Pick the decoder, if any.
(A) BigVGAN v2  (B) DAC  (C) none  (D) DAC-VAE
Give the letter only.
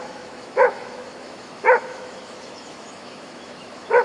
D